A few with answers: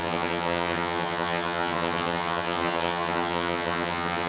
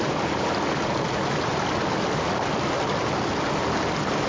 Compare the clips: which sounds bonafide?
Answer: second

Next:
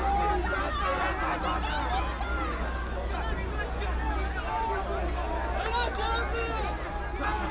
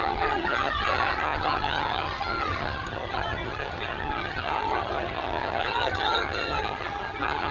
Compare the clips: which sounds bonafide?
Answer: first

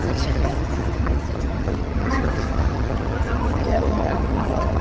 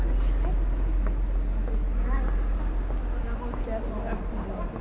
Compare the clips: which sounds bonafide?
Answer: second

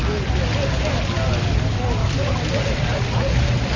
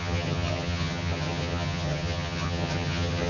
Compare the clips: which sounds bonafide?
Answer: first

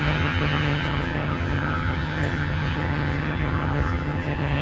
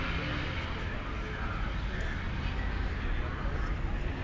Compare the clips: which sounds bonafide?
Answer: second